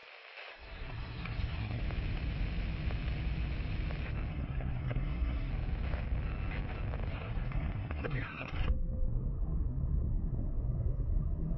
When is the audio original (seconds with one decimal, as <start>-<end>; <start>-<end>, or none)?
0.0-0.5; 1.8-4.3; 5.5-7.1